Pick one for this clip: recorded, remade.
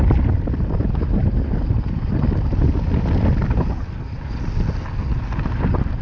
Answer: recorded